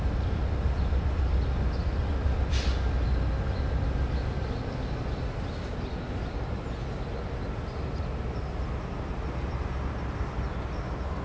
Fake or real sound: real